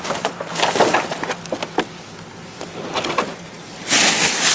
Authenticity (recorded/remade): recorded